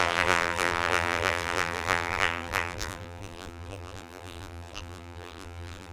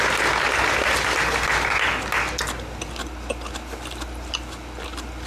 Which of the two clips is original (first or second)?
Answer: second